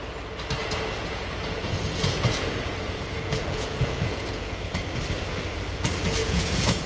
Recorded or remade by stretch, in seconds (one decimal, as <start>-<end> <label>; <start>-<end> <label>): 0.0-0.6 recorded; 0.6-4.7 remade; 4.7-6.2 recorded; 6.2-6.9 remade

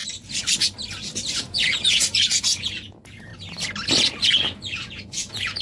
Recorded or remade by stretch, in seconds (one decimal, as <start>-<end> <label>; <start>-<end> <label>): 0.0-1.3 recorded; 1.3-3.3 remade; 3.3-4.2 recorded; 4.2-5.6 remade

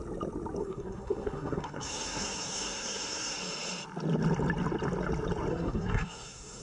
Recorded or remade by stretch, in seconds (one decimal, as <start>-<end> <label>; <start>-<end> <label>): 0.0-0.6 recorded; 0.6-3.4 remade; 3.4-5.5 recorded; 5.5-6.6 remade

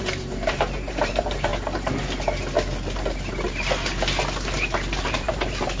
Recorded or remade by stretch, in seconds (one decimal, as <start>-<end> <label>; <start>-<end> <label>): 0.0-1.5 remade; 1.5-5.0 recorded; 5.0-5.8 remade

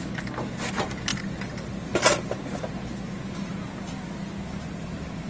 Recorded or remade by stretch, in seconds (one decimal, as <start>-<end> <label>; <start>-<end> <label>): 0.0-5.3 recorded

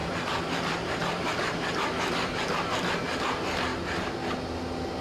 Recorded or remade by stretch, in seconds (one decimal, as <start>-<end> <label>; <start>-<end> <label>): 0.0-2.7 remade; 2.7-3.7 recorded; 3.7-4.3 remade; 4.3-5.0 recorded

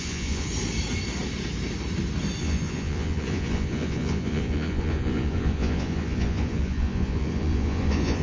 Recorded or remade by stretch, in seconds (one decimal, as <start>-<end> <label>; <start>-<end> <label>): 0.0-0.5 remade; 0.5-2.4 recorded; 2.4-8.2 remade

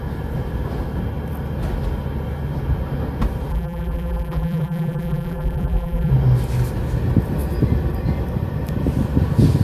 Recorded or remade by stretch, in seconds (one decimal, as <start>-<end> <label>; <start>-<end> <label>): 0.0-3.5 recorded; 3.5-6.1 remade; 6.1-9.6 recorded